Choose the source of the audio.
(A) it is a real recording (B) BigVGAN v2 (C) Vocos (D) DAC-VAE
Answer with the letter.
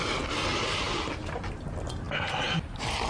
A